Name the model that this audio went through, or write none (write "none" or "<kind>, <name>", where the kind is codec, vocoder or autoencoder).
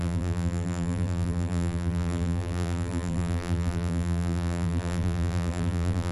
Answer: vocoder, BigVGAN v2